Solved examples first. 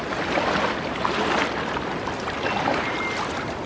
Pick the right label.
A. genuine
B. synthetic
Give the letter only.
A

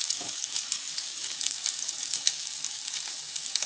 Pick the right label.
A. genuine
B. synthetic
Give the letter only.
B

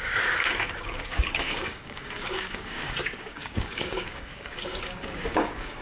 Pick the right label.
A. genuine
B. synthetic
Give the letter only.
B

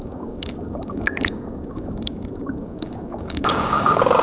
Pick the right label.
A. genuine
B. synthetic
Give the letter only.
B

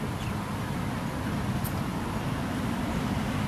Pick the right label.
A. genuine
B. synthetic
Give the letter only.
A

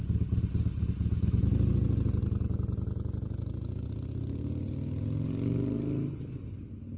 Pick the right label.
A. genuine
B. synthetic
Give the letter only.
A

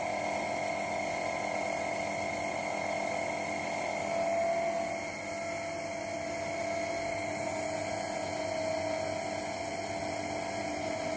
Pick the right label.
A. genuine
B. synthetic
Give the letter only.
A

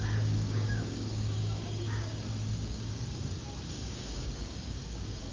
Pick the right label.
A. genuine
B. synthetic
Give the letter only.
B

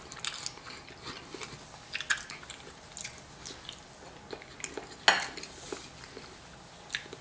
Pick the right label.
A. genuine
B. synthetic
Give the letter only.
A